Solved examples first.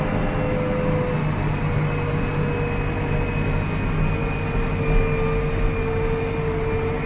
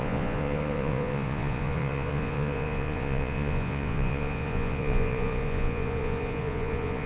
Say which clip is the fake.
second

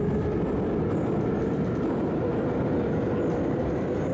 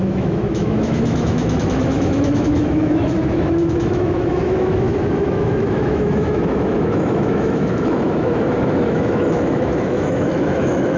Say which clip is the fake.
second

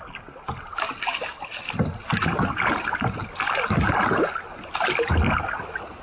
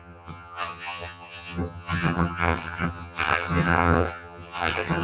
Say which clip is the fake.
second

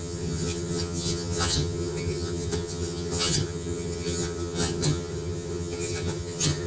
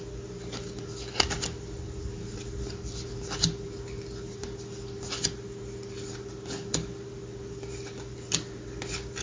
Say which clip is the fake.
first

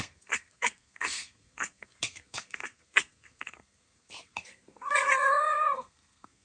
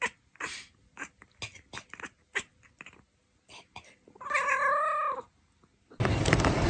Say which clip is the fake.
first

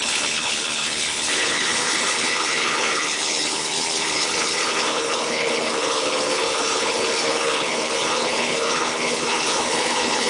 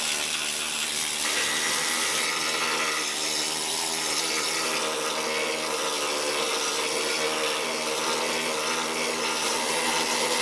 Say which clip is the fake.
first